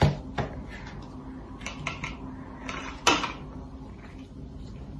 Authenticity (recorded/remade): recorded